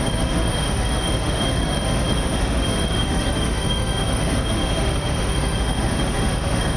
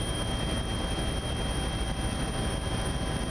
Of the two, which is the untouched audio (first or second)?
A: second